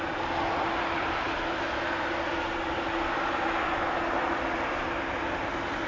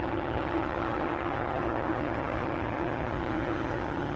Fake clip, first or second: second